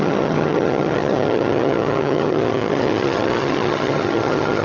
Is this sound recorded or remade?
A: remade